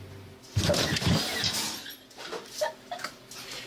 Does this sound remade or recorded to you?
recorded